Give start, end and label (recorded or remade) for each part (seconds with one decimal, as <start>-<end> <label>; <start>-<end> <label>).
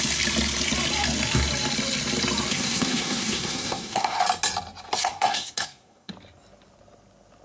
0.0-2.5 recorded; 2.5-4.2 remade; 4.2-5.0 recorded; 5.0-6.1 remade; 6.1-7.4 recorded